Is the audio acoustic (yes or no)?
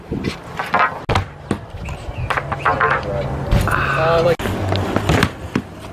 yes